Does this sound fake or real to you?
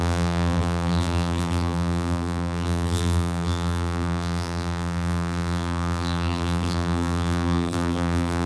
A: fake